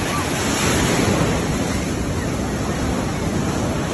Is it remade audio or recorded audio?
recorded